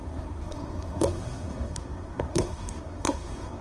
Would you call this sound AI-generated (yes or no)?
yes